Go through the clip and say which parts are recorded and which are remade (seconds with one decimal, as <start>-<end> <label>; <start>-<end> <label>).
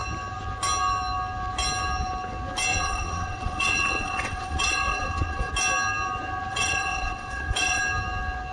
0.0-2.7 recorded; 2.7-5.5 remade; 5.5-6.5 recorded; 6.5-7.8 remade; 7.8-8.5 recorded